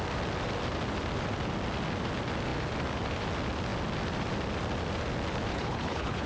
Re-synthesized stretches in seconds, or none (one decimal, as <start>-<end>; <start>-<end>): 5.5-6.3